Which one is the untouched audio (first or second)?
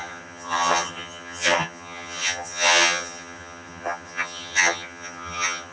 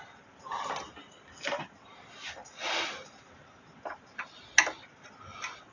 second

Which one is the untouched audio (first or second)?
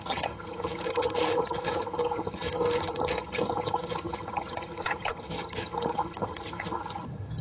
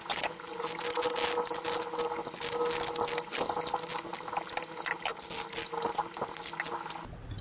second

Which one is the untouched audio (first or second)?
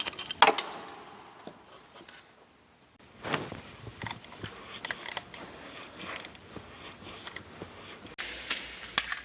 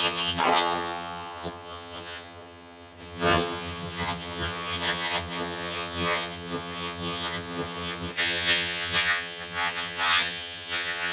first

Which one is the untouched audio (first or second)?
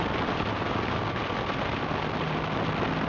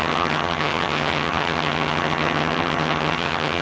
first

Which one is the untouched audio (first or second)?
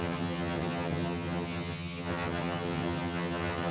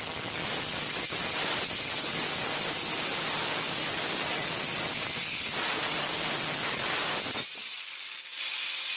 second